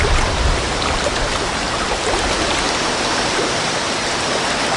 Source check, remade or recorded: remade